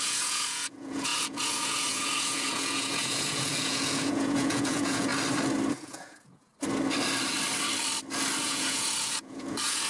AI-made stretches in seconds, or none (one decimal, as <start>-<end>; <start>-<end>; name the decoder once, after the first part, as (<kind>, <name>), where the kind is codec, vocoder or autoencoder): 0.0-5.1 (vocoder, Vocos); 5.7-6.5; 8.4-9.9